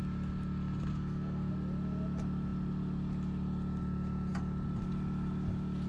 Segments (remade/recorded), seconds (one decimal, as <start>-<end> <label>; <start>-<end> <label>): 0.0-0.9 recorded; 0.9-1.5 remade; 1.5-5.9 recorded